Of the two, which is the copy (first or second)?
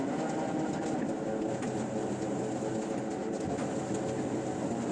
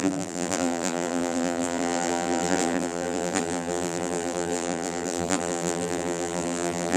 second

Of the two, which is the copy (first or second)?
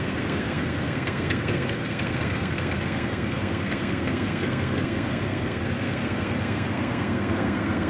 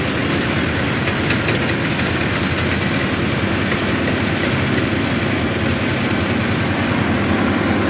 first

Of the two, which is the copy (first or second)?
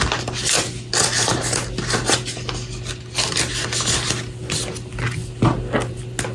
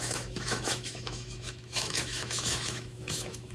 second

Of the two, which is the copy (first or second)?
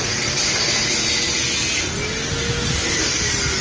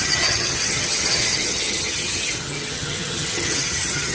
second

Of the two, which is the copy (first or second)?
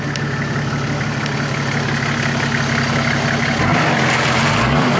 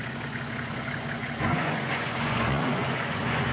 second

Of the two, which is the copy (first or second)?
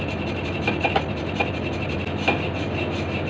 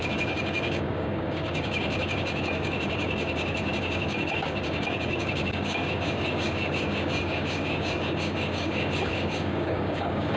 second